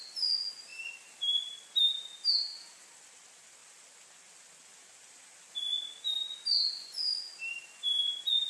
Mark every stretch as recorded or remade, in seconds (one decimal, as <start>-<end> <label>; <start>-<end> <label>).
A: 0.0-6.6 recorded; 6.6-7.3 remade; 7.3-8.5 recorded